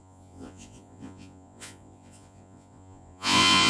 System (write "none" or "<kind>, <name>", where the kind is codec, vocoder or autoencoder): vocoder, Vocos